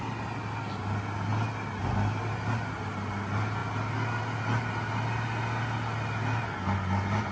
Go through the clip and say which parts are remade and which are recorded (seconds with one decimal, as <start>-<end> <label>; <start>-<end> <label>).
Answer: 0.0-7.3 recorded